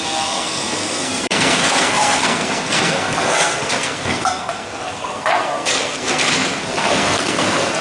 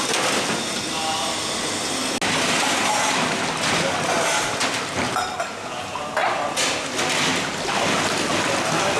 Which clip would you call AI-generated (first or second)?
first